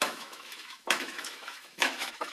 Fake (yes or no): yes